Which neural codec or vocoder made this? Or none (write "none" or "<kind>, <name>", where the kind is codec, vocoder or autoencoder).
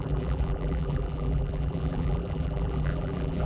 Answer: vocoder, BigVGAN v2